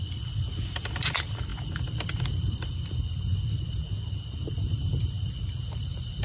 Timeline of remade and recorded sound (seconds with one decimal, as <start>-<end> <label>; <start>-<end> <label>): 0.0-6.2 recorded